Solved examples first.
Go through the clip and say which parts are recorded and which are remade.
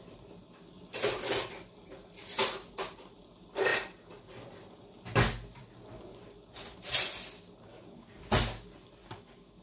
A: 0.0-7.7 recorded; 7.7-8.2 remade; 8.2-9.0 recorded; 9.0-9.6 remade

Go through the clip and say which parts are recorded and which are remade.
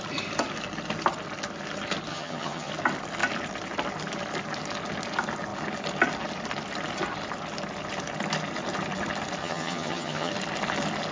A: 0.0-2.1 recorded; 2.1-2.7 remade; 2.7-9.4 recorded; 9.4-10.3 remade; 10.3-11.1 recorded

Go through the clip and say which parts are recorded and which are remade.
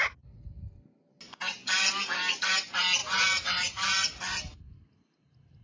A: 0.0-5.6 recorded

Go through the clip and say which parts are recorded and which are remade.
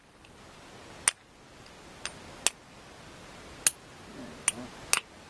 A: 0.0-5.3 recorded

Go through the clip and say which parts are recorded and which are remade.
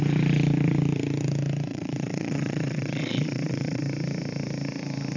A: 0.0-1.7 recorded; 1.7-3.8 remade; 3.8-5.2 recorded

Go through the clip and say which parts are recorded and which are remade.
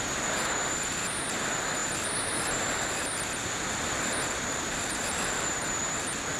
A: 0.0-6.4 recorded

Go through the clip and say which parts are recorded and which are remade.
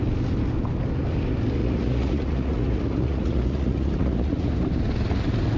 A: 0.0-1.6 recorded; 1.6-4.5 remade; 4.5-5.6 recorded